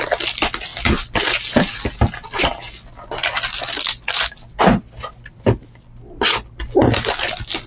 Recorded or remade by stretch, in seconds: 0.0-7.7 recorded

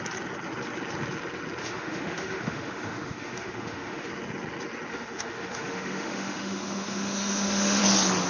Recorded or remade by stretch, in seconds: 0.0-1.6 recorded; 1.6-4.1 remade; 4.1-4.9 recorded; 4.9-7.8 remade; 7.8-8.3 recorded

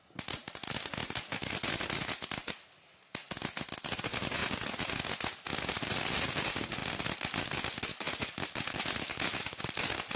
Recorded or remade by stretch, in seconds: 0.0-7.9 recorded; 7.9-9.6 remade; 9.6-10.2 recorded

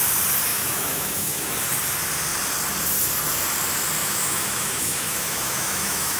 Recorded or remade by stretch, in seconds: 0.0-0.5 recorded; 0.5-1.5 remade; 1.5-4.0 recorded; 4.0-6.2 remade